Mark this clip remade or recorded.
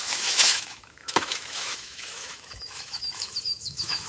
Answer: remade